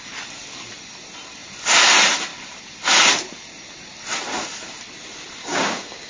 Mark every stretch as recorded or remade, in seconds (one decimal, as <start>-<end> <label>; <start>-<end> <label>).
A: 0.0-5.4 recorded; 5.4-6.1 remade